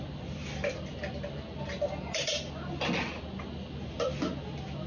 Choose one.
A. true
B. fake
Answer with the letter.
A